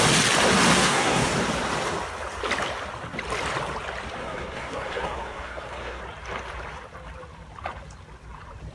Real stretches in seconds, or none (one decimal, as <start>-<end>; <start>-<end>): 0.0-0.8; 1.3-4.2; 6.0-8.7